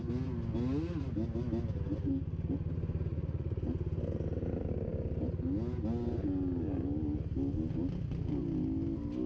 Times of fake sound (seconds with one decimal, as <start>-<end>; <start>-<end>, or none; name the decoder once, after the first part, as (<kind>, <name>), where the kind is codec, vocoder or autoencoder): 3.1-3.6 (vocoder, Vocos)